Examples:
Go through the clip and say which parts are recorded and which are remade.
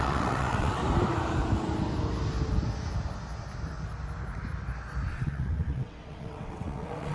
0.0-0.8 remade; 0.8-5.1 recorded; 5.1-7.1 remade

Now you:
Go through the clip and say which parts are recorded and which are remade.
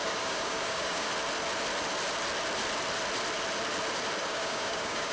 0.0-1.1 remade; 1.1-4.2 recorded; 4.2-5.1 remade